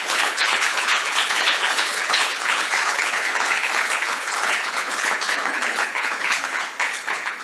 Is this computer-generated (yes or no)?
yes